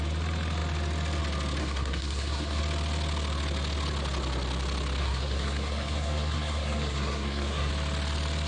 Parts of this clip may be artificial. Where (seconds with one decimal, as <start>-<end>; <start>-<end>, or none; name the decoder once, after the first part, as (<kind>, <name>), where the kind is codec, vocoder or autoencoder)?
1.6-2.6 (codec, SNAC); 5.0-7.7